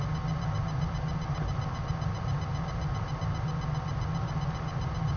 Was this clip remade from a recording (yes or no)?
no